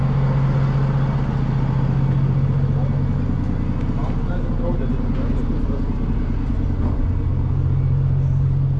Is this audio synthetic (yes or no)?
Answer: no